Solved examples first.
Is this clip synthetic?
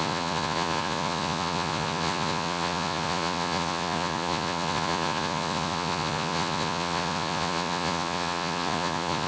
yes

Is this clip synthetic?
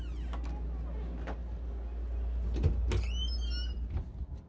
no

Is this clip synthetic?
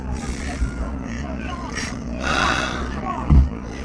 yes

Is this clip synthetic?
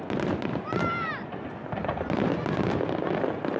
no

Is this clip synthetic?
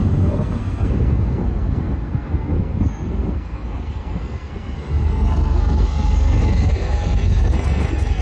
yes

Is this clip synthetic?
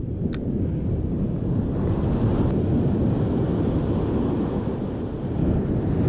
no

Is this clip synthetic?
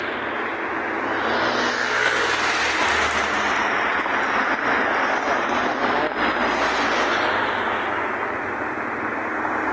no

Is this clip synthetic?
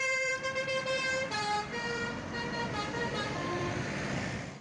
yes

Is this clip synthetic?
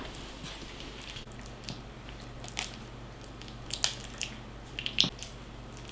no